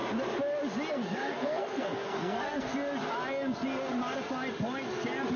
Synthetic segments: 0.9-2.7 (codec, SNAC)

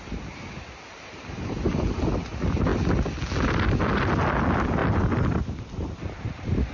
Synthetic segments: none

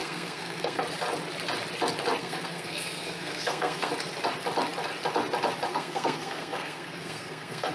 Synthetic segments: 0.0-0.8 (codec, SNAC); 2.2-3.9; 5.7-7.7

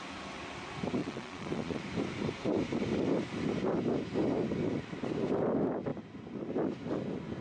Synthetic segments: 1.0-1.8 (vocoder, Vocos)

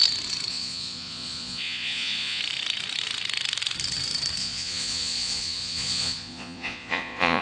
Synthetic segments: 0.5-2.4 (vocoder, Vocos); 4.4-7.4

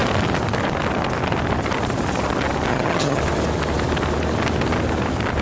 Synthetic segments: 2.7-3.2 (vocoder, HiFi-GAN)

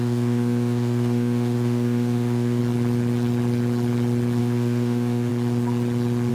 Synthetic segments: 0.0-2.6 (autoencoder, DAC-VAE); 4.4-5.3

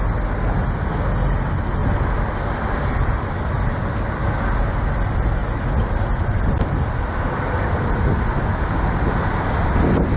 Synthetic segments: 1.8-3.3 (vocoder, BigVGAN v2)